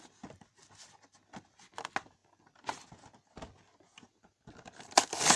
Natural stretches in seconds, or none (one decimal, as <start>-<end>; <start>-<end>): 0.0-5.4